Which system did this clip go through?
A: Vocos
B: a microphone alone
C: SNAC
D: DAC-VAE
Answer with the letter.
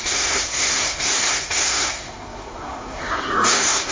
C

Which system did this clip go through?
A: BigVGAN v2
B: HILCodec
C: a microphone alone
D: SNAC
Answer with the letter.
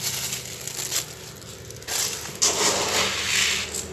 C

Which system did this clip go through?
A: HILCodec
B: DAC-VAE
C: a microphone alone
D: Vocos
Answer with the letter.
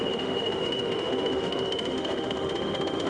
B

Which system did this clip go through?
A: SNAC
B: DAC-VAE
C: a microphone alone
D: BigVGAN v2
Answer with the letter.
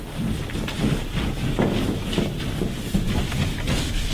C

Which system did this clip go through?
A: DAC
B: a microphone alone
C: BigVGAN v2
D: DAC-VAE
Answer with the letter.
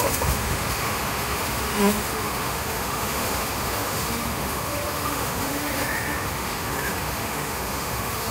D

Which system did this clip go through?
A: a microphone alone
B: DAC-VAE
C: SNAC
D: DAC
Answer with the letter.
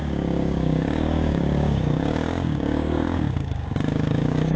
D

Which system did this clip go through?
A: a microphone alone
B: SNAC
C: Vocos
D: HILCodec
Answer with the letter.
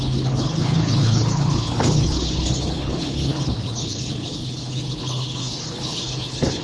D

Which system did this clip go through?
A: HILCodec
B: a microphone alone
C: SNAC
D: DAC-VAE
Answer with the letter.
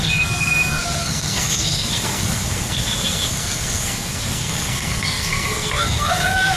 C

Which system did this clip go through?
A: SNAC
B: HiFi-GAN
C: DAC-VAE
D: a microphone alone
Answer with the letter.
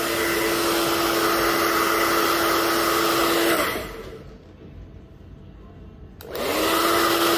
D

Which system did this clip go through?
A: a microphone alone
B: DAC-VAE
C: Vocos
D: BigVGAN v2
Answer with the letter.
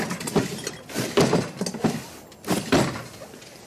A